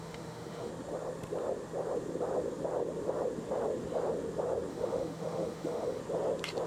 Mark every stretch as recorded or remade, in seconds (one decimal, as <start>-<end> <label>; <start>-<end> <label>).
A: 0.0-0.7 remade; 0.7-4.7 recorded; 4.7-6.0 remade; 6.0-6.7 recorded